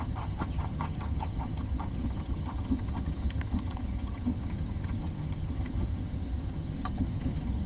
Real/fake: fake